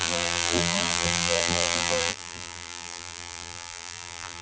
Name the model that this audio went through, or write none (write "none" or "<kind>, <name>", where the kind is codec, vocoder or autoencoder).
vocoder, BigVGAN v2